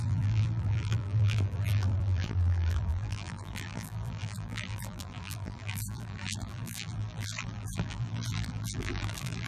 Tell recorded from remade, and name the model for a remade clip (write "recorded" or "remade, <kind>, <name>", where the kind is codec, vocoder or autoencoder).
remade, vocoder, BigVGAN v2